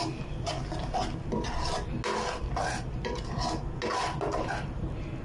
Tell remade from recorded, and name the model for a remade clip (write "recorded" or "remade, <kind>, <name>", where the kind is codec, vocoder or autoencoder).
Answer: recorded